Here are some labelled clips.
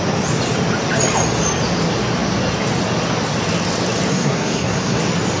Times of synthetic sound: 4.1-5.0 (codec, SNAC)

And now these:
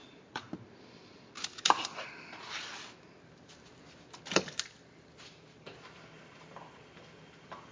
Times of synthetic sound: 0.0-0.5 (vocoder, Vocos)

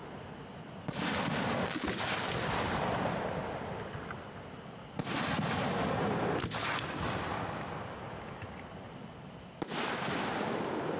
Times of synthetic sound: 0.0-3.2 (vocoder, BigVGAN v2)

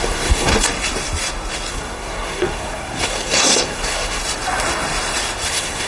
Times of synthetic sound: 0.0-0.5 (codec, SNAC); 1.7-4.2; 5.5-5.9